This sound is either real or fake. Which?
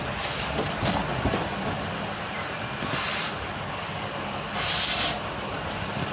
real